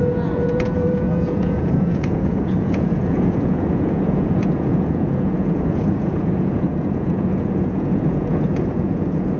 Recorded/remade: remade